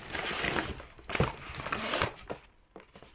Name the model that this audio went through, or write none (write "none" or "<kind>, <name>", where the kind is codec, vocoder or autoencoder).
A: none